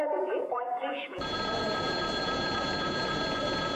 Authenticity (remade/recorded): remade